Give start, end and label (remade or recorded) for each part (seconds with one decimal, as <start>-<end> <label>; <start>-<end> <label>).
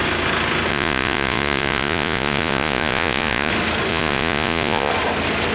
0.0-0.7 recorded; 0.7-3.5 remade; 3.5-3.9 recorded; 3.9-4.9 remade; 4.9-5.5 recorded